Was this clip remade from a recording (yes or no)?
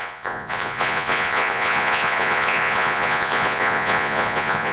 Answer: yes